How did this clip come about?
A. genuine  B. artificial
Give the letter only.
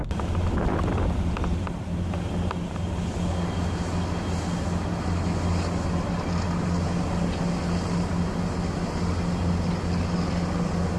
A